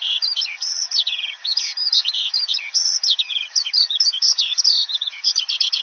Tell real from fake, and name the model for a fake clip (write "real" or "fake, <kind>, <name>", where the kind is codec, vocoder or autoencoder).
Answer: fake, vocoder, HiFi-GAN